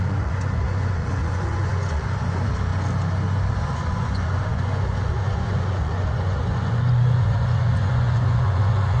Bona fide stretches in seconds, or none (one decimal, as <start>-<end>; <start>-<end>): 2.7-3.6